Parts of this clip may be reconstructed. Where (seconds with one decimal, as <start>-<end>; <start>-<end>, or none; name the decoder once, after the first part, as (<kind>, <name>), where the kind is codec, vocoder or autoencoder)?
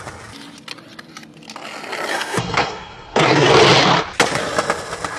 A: 2.1-3.5 (codec, SNAC)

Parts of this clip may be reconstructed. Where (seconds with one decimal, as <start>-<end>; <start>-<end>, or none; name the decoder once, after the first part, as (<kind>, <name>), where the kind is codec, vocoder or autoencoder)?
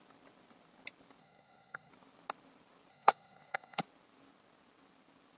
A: 1.2-1.9 (codec, SNAC); 2.9-3.8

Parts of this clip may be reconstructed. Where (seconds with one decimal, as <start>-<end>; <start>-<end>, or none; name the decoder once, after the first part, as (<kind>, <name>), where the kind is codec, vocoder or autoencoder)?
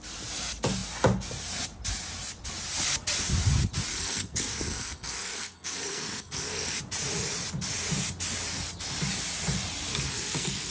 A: 3.9-6.8 (codec, SNAC); 9.9-10.7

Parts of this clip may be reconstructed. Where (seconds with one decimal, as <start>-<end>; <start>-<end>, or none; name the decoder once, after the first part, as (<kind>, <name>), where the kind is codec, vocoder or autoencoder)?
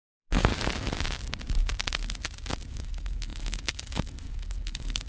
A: 0.0-0.5 (codec, SNAC); 2.7-5.1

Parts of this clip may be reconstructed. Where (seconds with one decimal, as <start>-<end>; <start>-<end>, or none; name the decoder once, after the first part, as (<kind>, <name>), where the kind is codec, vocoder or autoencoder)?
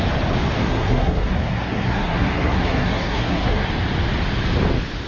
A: 0.6-3.7 (codec, SNAC)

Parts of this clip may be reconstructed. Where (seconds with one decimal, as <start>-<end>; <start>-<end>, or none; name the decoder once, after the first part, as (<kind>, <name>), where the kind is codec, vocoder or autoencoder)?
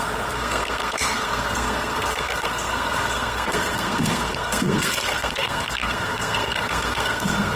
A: 0.0-7.6 (codec, SNAC)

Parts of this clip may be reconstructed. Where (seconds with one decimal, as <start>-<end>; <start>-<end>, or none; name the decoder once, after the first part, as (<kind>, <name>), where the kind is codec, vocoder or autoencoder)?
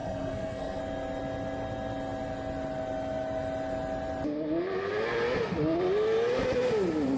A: 0.0-0.8 (codec, SNAC)